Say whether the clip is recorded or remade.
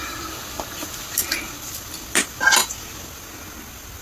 recorded